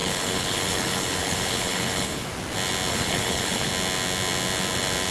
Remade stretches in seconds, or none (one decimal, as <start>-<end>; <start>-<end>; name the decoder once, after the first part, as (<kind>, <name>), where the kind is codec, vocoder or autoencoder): 0.0-2.3 (codec, HILCodec); 2.9-3.7